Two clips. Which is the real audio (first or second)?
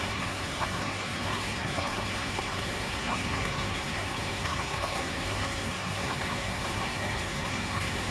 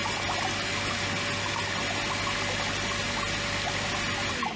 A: second